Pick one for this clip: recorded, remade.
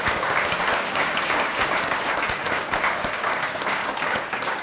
remade